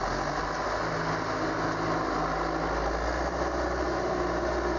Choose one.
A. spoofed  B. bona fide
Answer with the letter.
B